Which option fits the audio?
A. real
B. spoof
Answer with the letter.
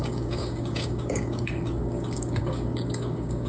B